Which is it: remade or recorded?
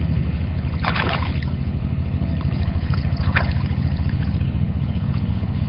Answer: remade